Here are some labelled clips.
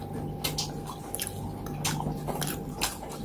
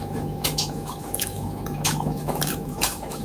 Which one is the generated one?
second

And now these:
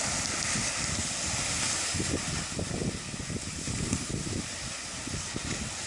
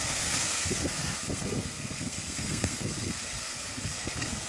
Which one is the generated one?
second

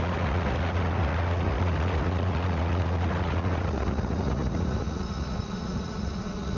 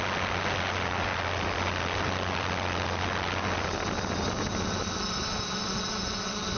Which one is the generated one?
first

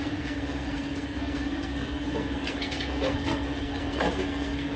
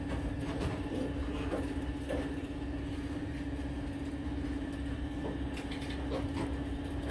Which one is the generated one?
first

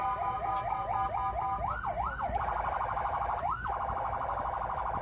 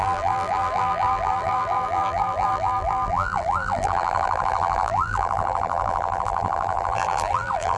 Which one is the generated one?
second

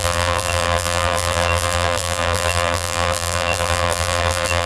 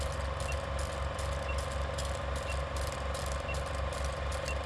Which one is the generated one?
first